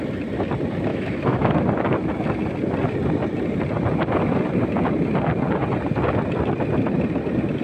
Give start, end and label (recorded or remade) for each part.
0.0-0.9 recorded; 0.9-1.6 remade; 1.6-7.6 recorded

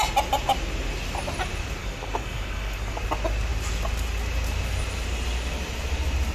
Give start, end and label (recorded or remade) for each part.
0.0-1.8 recorded; 1.8-3.0 remade; 3.0-6.3 recorded

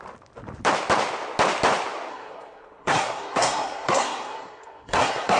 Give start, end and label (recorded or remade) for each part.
0.0-2.1 recorded; 2.1-5.4 remade

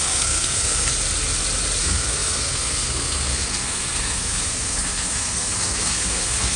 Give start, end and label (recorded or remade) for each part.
0.0-0.9 remade; 0.9-1.8 recorded; 1.8-6.6 remade

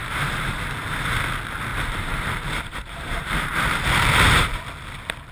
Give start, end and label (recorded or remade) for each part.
0.0-0.5 remade; 0.5-1.7 recorded; 1.7-4.6 remade; 4.6-5.3 recorded

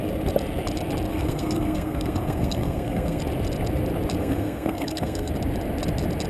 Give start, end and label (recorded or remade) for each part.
0.0-1.1 recorded; 1.1-3.2 remade; 3.2-4.2 recorded; 4.2-5.3 remade; 5.3-6.3 recorded

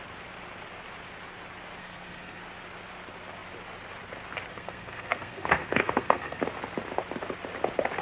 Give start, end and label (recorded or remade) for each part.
0.0-1.8 recorded; 1.8-2.4 remade; 2.4-4.5 recorded; 4.5-6.4 remade; 6.4-8.0 recorded

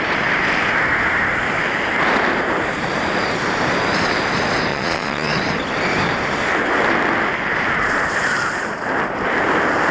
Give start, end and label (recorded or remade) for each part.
0.0-4.7 recorded; 4.7-5.4 remade; 5.4-9.9 recorded